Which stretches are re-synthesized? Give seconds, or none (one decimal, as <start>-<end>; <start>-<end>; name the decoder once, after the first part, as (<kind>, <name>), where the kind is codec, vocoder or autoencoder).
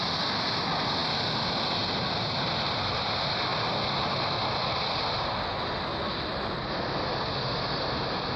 none